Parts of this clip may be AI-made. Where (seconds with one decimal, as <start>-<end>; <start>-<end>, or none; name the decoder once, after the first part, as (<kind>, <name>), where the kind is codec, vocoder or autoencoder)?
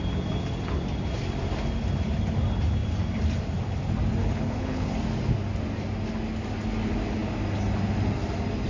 4.2-4.9 (codec, HILCodec)